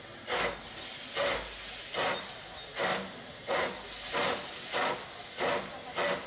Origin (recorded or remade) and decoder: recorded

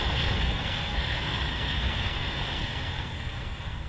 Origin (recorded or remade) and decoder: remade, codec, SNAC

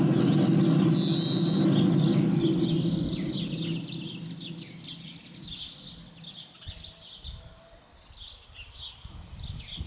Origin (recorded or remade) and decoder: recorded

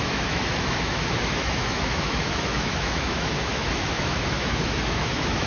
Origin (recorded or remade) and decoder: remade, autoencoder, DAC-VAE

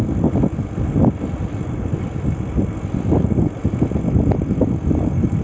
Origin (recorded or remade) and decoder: recorded